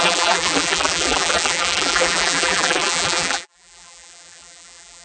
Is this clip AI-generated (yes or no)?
yes